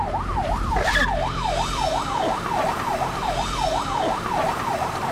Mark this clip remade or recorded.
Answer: remade